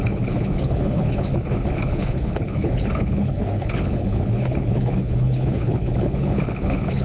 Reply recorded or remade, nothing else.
remade